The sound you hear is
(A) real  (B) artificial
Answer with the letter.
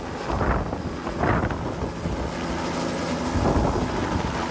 A